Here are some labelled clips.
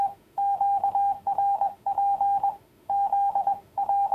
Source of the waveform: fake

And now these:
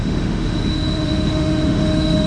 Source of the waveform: fake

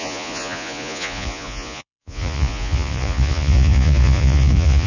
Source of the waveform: fake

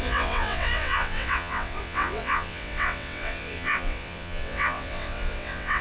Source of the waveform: fake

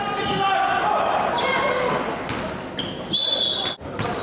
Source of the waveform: real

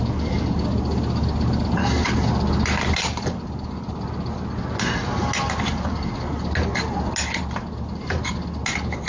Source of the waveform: real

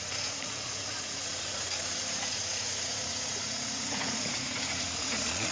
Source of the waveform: fake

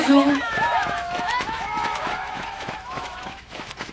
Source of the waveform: fake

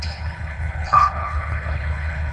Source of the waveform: fake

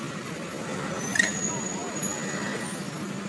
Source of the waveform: real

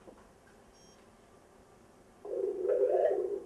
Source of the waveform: real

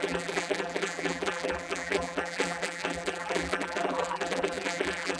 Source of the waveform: fake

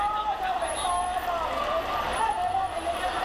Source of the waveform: real